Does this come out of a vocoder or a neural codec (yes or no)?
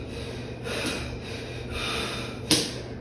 no